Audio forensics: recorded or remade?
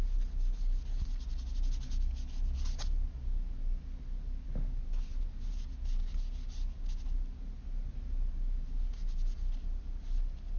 recorded